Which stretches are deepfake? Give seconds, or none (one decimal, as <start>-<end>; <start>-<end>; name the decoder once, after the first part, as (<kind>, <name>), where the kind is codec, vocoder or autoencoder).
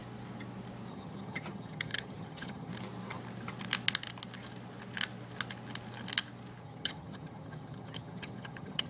0.9-2.7 (vocoder, HiFi-GAN); 6.6-8.9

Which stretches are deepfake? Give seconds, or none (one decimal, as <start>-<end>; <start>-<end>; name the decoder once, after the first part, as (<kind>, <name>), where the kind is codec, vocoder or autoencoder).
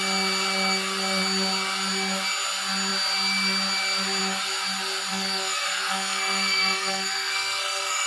5.1-8.1 (codec, SNAC)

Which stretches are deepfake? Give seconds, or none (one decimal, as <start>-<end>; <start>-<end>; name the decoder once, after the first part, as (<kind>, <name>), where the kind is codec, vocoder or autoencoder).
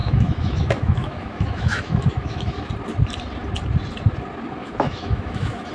0.0-2.7 (autoencoder, DAC-VAE); 4.6-5.7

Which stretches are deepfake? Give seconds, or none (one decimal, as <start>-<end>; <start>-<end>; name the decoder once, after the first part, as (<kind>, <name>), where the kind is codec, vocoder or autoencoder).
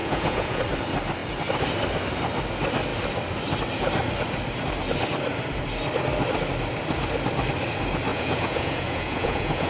0.0-0.6 (vocoder, Vocos); 8.1-9.7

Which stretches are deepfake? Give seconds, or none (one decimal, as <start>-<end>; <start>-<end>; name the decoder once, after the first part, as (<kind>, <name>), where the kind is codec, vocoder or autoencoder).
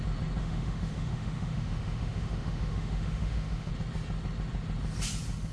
0.4-3.7 (autoencoder, DAC-VAE)